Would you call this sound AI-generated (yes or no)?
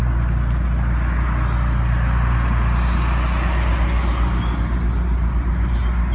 no